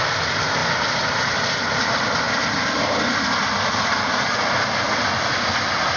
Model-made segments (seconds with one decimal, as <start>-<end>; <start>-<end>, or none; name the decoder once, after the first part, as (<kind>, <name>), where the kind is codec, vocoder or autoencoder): none